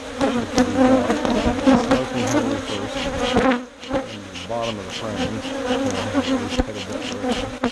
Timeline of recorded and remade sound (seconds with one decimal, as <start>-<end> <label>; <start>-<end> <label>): 0.0-7.7 recorded